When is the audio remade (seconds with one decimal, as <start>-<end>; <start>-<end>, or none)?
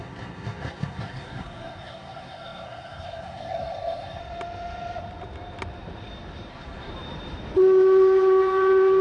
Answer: 0.0-4.2; 6.5-6.9